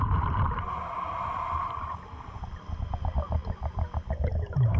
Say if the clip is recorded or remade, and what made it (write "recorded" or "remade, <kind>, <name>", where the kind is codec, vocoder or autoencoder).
recorded